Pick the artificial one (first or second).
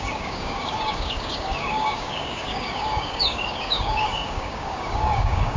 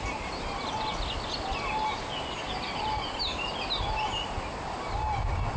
first